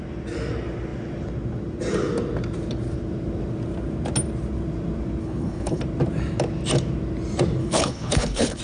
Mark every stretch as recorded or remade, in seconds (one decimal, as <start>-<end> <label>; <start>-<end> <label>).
0.0-5.2 recorded; 5.2-5.8 remade; 5.8-7.6 recorded; 7.6-8.6 remade